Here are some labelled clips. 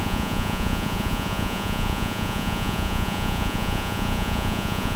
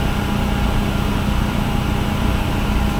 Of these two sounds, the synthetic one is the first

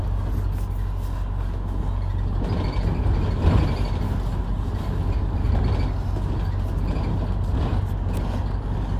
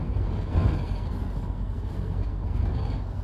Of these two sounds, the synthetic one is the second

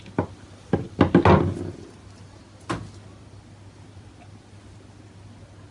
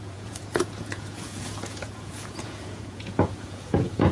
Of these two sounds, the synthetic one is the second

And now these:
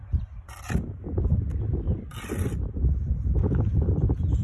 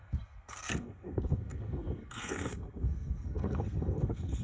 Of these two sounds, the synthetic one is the second